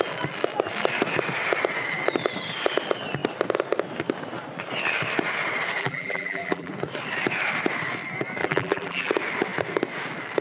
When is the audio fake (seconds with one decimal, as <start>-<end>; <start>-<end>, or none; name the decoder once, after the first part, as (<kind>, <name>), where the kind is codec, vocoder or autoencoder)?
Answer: 5.8-6.7 (vocoder, BigVGAN v2); 8.4-9.1